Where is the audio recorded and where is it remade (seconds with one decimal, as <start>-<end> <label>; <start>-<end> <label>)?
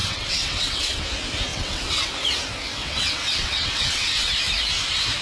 0.0-1.0 remade; 1.0-1.5 recorded; 1.5-2.1 remade; 2.1-2.8 recorded; 2.8-4.3 remade; 4.3-5.2 recorded